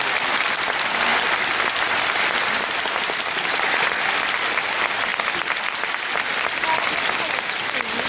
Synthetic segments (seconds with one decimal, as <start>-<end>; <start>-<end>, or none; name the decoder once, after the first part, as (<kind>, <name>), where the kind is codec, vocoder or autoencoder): none